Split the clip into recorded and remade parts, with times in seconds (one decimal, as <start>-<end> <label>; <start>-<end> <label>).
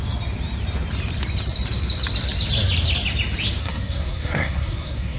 0.0-3.6 recorded; 3.6-5.2 remade